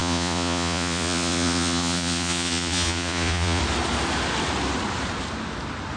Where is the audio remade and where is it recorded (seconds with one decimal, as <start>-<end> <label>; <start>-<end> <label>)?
0.0-3.6 remade; 3.6-6.0 recorded